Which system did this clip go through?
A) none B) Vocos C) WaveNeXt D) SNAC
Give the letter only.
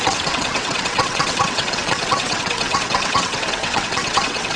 C